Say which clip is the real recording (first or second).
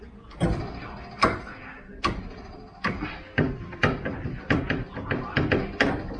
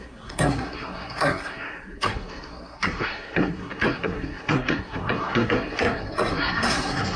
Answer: first